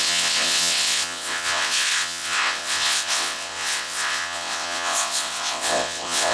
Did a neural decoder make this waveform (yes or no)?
yes